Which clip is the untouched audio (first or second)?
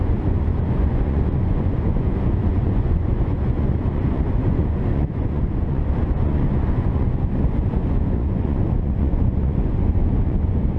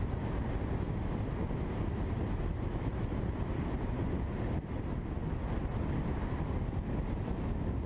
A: second